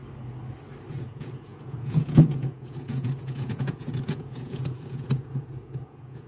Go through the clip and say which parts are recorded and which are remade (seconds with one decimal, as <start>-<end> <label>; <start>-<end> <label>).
0.0-0.9 recorded; 0.9-6.3 remade